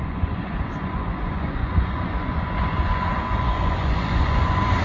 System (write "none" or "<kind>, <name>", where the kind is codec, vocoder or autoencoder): vocoder, Vocos